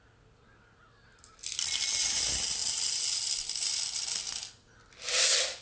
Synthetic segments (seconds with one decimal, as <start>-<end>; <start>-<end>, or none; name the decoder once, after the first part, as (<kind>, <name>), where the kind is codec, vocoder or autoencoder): none